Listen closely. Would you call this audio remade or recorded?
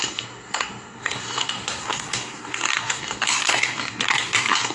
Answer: remade